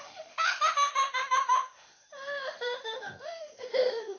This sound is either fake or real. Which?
fake